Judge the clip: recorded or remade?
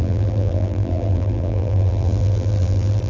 remade